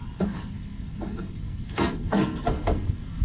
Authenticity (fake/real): fake